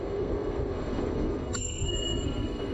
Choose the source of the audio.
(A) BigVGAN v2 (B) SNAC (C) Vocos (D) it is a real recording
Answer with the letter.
B